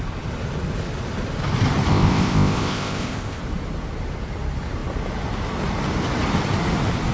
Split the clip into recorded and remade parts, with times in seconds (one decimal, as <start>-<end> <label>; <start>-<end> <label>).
0.0-1.9 recorded; 1.9-3.4 remade; 3.4-7.1 recorded